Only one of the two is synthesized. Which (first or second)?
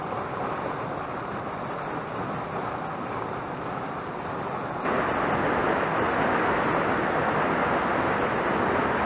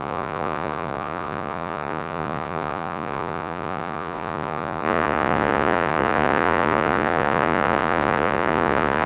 second